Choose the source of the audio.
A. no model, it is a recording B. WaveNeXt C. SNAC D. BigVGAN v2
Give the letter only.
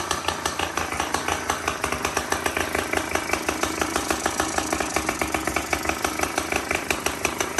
D